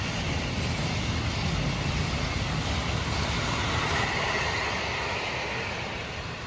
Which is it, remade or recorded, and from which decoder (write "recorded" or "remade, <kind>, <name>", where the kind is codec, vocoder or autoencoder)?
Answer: recorded